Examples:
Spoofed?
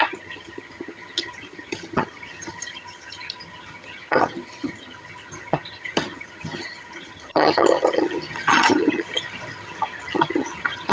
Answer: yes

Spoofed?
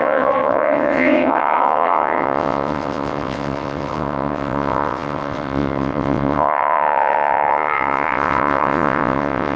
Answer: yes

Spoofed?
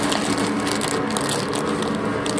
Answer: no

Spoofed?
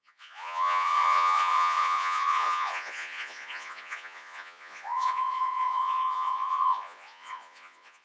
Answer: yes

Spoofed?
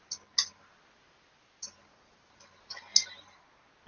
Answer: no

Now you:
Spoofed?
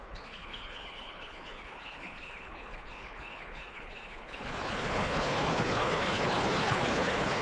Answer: yes